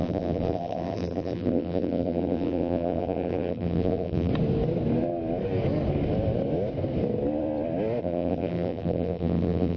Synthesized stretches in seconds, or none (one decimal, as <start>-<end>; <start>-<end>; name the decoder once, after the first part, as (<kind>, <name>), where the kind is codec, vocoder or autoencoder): 0.0-4.3 (vocoder, BigVGAN v2); 8.0-9.8